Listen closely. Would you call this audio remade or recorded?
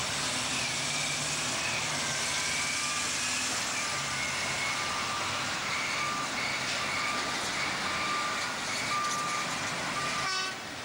recorded